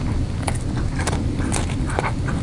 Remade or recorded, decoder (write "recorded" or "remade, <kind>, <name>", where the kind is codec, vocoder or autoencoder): recorded